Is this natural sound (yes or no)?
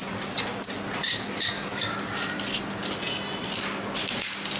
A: yes